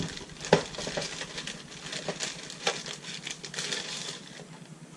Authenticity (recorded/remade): recorded